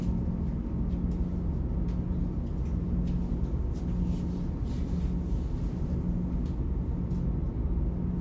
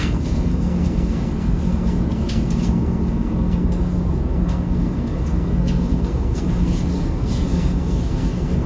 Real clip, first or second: first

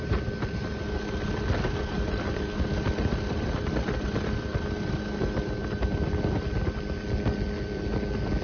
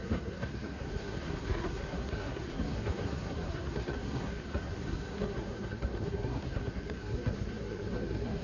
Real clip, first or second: first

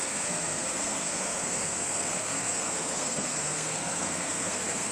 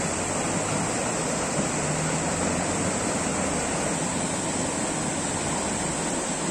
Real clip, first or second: second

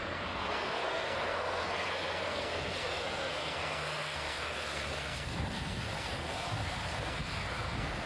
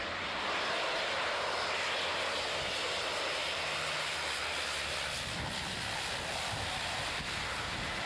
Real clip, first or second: second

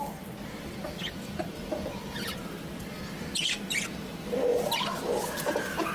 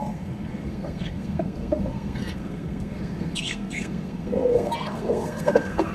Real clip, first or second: first